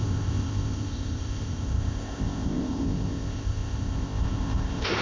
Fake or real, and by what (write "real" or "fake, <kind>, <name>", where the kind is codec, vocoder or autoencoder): fake, codec, ZipCodec